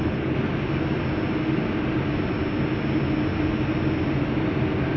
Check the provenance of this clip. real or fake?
real